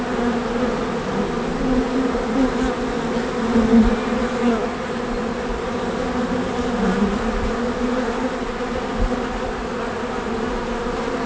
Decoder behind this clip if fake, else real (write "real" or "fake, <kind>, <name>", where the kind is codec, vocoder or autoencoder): real